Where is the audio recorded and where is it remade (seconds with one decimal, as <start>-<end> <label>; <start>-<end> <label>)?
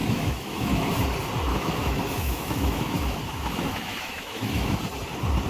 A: 0.0-0.9 remade; 0.9-1.5 recorded; 1.5-4.8 remade; 4.8-5.5 recorded